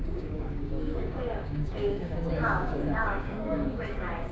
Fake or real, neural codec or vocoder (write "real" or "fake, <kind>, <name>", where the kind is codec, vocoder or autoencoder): fake, codec, DAC